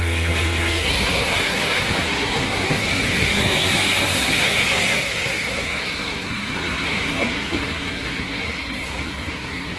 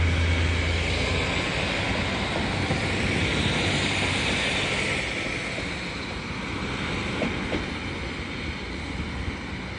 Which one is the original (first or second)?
second